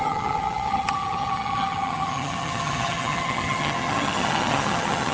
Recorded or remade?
remade